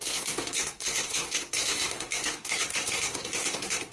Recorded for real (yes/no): no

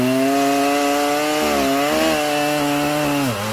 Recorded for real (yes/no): yes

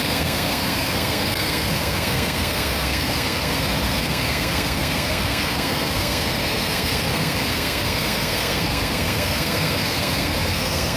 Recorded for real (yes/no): no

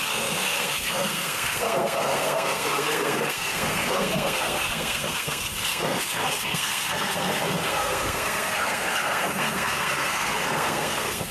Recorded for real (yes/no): no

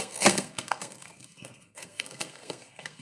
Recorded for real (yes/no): no